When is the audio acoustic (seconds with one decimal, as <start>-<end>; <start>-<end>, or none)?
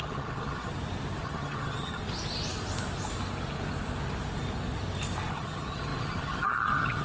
0.7-1.2; 2.0-5.3